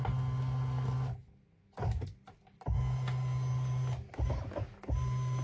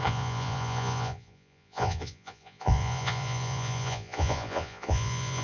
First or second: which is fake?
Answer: second